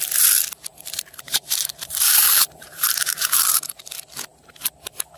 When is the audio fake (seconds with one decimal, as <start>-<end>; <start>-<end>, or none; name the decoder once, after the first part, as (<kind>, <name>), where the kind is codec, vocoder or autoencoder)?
0.7-3.8 (vocoder, BigVGAN v2)